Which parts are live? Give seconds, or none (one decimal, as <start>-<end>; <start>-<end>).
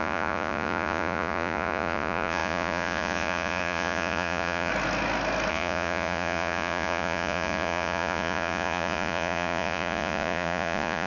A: 4.7-5.5